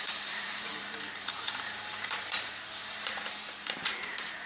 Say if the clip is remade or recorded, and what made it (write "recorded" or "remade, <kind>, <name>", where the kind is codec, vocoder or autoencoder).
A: remade, vocoder, BigVGAN v2